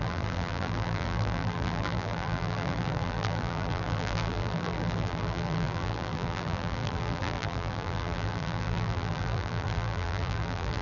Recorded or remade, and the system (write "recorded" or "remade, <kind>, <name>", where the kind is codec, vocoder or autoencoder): remade, vocoder, BigVGAN v2